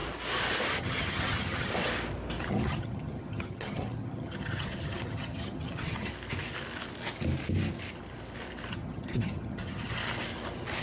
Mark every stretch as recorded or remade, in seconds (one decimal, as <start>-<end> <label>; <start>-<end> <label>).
0.0-0.8 recorded; 0.8-1.7 remade; 1.7-2.5 recorded; 2.5-6.1 remade; 6.1-8.7 recorded; 8.7-10.0 remade; 10.0-10.8 recorded